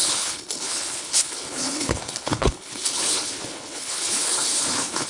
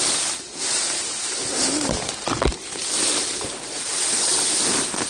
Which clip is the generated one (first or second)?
first